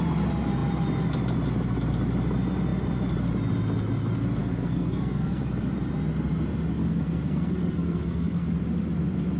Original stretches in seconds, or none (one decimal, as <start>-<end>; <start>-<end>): 0.0-4.4; 5.4-6.8; 8.6-9.4